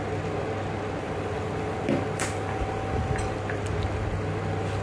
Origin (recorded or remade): recorded